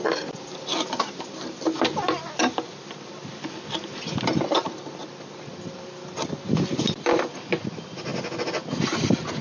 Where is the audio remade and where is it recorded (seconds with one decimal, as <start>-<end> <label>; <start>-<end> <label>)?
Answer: 0.0-9.4 recorded

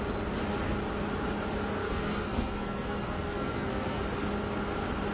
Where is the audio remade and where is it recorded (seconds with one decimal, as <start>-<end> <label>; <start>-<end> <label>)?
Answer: 0.0-1.8 recorded; 1.8-4.0 remade; 4.0-5.1 recorded